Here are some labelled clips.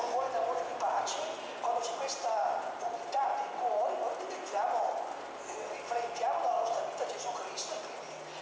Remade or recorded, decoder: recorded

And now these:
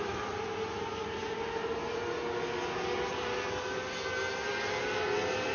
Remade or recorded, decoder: recorded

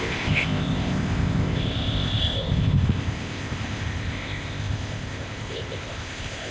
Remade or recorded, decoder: remade, codec, ZipCodec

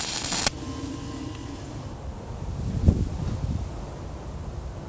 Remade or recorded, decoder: recorded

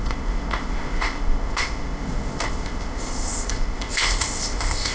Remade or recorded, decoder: remade, codec, ZipCodec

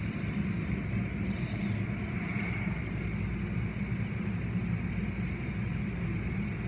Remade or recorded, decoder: recorded